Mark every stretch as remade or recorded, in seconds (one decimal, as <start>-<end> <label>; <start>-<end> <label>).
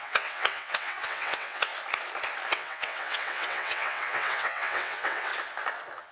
0.0-1.7 remade; 1.7-2.5 recorded; 2.5-5.3 remade; 5.3-6.1 recorded